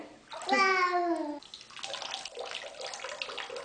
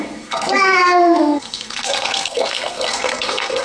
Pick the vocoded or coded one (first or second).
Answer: second